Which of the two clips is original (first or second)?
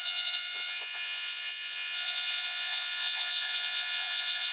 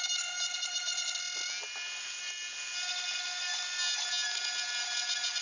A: second